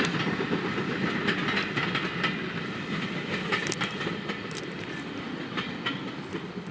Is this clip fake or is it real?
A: real